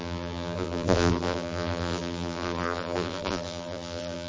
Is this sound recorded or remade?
remade